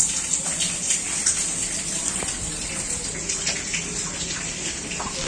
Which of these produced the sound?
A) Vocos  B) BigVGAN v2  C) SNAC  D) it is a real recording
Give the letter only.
D